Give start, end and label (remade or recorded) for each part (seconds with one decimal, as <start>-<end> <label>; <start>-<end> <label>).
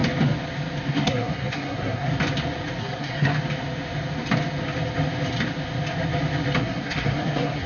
0.0-0.9 recorded; 0.9-2.1 remade; 2.1-2.8 recorded; 2.8-3.3 remade; 3.3-6.6 recorded; 6.6-7.7 remade